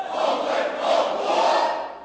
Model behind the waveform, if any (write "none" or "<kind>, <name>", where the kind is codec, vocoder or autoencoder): none